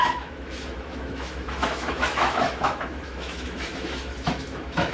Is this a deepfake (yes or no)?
yes